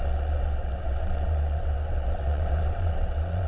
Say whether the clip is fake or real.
fake